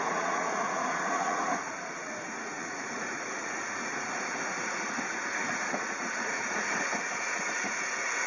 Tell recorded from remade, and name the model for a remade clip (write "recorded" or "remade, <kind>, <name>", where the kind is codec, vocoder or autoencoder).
remade, vocoder, Vocos